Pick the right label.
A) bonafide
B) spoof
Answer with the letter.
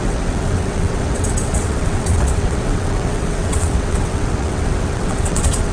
B